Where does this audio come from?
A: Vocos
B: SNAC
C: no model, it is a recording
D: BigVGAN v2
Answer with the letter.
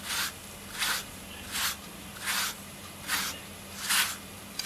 C